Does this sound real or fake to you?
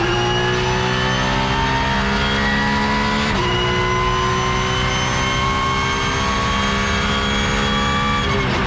real